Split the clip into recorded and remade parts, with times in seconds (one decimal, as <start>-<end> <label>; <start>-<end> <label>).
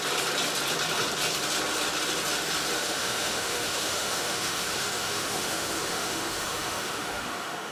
0.0-2.8 recorded; 2.8-7.7 remade